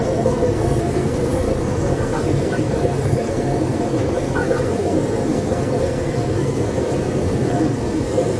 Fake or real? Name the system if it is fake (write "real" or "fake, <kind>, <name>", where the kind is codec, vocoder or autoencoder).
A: fake, codec, SNAC